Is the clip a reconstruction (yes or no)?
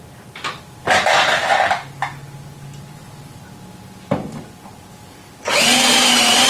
no